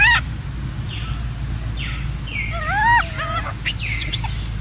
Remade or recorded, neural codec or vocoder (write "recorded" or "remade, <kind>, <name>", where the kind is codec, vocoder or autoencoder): recorded